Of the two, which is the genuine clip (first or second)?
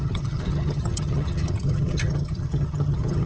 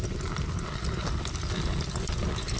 second